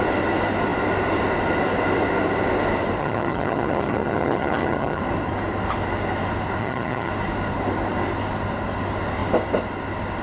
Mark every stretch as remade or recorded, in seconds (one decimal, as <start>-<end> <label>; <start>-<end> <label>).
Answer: 0.0-3.0 recorded; 3.0-5.0 remade; 5.0-6.6 recorded; 6.6-7.1 remade; 7.1-10.2 recorded